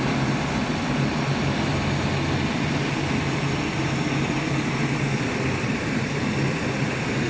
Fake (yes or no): no